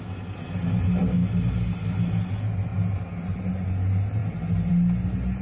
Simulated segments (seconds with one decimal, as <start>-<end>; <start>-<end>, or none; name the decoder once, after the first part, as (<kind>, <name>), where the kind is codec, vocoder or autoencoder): none

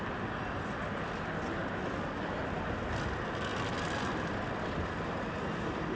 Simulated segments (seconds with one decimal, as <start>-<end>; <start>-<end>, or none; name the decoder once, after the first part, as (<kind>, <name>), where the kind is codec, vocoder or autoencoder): none

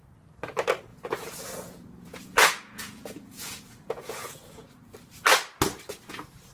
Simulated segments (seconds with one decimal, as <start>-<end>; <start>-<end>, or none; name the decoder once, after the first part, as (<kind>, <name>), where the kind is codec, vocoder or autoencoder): 0.9-4.8 (vocoder, Vocos)

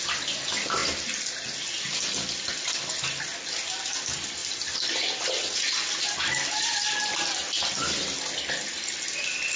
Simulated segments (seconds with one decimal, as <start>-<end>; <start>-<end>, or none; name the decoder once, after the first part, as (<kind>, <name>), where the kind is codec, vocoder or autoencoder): none